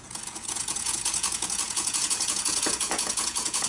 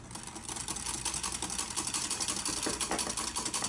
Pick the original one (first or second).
second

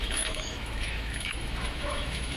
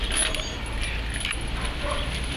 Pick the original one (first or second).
second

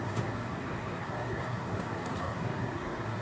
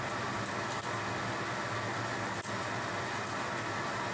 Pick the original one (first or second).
second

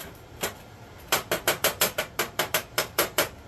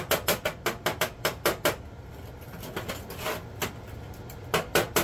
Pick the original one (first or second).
second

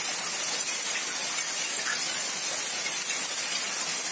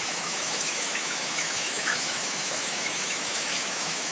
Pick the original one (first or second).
first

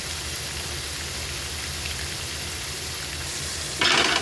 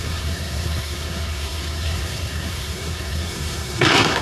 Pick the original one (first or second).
first